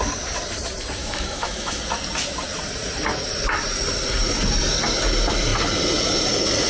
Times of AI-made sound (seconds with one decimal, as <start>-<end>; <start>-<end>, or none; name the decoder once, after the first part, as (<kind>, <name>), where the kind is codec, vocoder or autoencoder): 1.0-1.8 (autoencoder, DAC-VAE)